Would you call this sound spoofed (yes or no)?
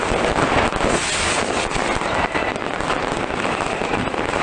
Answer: no